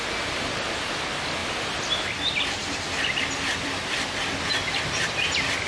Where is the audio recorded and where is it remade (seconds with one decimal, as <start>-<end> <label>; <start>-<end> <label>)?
0.0-1.4 recorded; 1.4-4.8 remade; 4.8-5.7 recorded